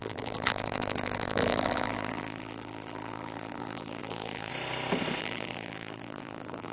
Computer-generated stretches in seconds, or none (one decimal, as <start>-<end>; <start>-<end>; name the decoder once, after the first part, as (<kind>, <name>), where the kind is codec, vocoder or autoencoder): 0.0-4.5 (vocoder, BigVGAN v2); 5.2-6.7